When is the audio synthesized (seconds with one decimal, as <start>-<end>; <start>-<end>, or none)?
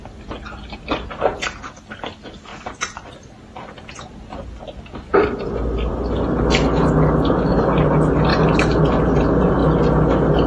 8.3-8.8